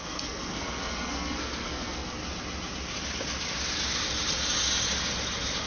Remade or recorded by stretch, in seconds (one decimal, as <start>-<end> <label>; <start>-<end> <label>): 0.0-2.2 remade; 2.2-5.7 recorded